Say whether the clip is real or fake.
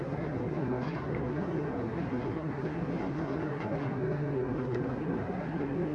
fake